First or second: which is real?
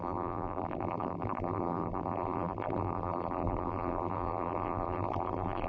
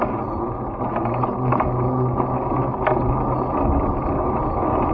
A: second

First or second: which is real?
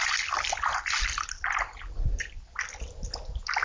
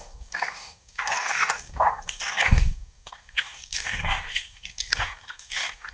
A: first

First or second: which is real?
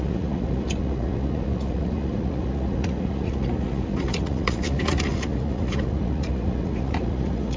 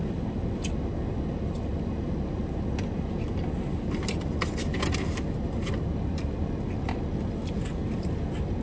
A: second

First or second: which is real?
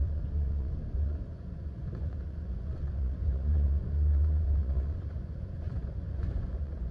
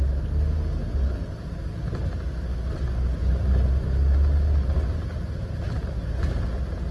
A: second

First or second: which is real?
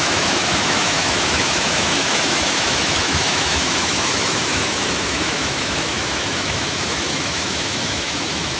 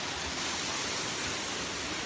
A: second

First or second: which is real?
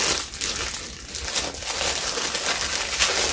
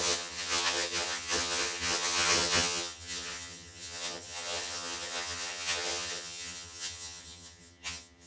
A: first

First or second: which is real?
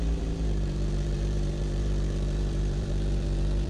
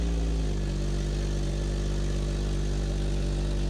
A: second